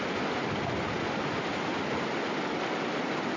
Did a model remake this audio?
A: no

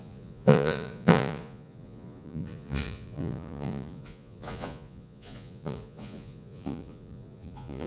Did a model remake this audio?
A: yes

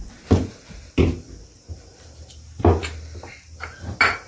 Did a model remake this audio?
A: no